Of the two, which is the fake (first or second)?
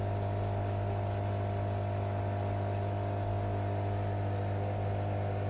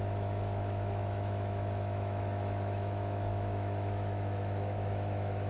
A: second